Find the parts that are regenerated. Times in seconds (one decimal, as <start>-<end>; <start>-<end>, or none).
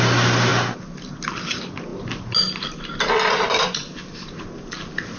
none